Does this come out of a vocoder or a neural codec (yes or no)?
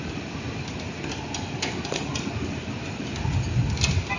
no